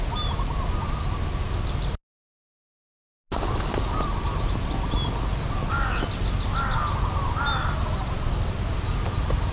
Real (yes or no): yes